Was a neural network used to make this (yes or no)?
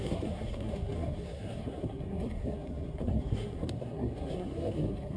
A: yes